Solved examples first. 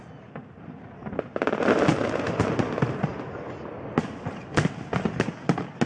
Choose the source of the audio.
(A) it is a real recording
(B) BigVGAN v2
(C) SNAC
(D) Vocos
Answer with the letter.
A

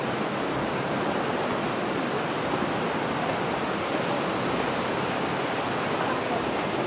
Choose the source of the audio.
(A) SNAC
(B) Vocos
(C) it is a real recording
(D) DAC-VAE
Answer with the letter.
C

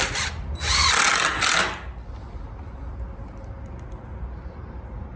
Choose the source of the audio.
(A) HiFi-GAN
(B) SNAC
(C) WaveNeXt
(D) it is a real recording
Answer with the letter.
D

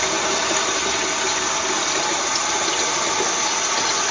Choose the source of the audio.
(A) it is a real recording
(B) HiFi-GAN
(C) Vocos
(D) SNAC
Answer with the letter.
A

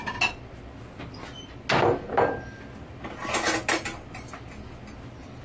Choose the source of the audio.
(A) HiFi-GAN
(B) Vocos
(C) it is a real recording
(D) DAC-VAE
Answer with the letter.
C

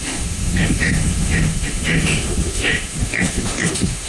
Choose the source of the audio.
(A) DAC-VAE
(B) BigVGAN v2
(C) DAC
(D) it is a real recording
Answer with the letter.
A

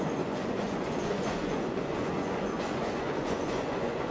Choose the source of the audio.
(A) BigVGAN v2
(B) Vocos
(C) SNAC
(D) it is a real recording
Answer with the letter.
B